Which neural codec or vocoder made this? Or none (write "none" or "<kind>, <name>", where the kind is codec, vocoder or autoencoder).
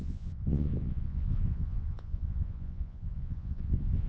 vocoder, Vocos